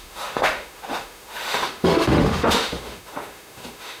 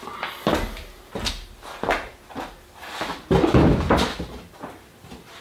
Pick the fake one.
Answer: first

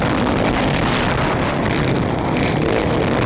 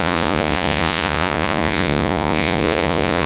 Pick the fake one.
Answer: second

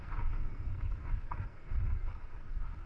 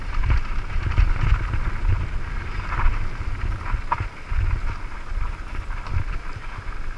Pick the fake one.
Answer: first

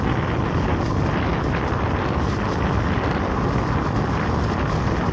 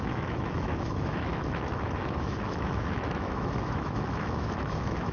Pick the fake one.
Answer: second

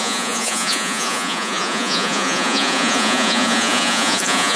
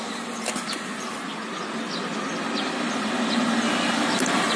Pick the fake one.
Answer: first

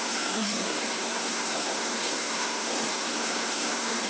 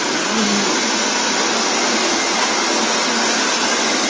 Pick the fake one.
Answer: first